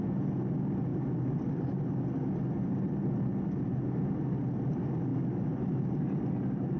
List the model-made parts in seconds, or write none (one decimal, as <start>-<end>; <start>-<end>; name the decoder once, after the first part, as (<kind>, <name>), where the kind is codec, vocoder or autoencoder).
none